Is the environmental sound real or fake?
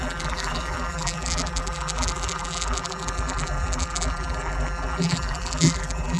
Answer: fake